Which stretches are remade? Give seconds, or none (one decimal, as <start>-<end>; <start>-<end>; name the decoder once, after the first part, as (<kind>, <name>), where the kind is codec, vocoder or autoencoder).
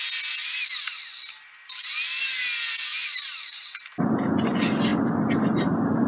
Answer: 2.2-6.1 (vocoder, BigVGAN v2)